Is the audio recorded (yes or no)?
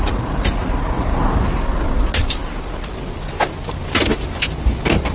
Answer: yes